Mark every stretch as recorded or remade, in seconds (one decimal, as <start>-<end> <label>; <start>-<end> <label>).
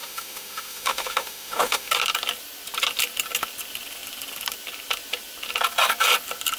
0.0-1.9 remade; 1.9-6.6 recorded